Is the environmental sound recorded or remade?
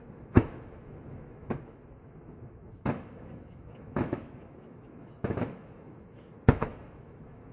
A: remade